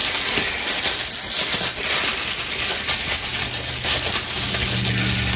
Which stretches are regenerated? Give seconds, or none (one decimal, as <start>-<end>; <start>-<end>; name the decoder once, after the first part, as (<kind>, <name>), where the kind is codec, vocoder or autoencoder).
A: none